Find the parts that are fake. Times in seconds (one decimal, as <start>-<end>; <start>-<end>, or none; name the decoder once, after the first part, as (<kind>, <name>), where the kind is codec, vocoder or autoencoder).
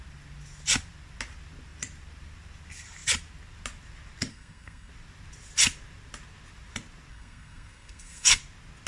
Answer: 4.3-4.9 (codec, SNAC); 7.1-8.4